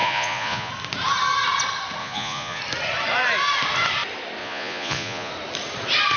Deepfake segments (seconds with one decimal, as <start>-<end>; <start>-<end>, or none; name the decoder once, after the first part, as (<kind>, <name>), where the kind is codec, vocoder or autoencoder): 0.0-0.7 (vocoder, Vocos); 2.0-2.6; 4.4-5.3